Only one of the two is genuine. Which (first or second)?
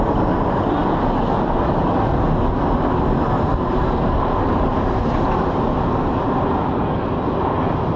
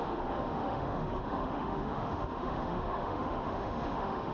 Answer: first